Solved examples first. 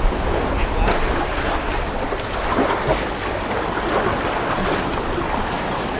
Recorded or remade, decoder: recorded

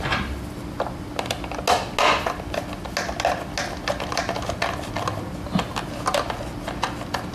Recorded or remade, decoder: recorded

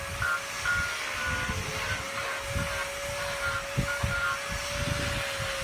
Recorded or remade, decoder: recorded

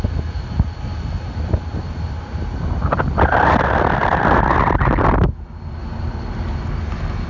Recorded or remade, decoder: recorded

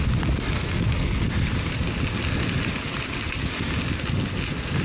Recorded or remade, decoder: recorded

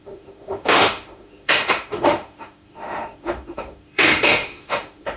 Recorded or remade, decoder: remade, autoencoder, DAC-VAE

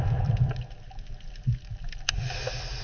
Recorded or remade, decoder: recorded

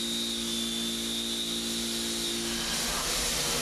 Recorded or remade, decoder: recorded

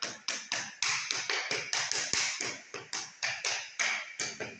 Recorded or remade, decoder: recorded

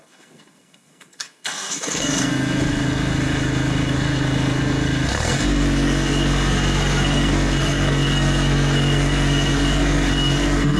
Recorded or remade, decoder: remade, codec, SNAC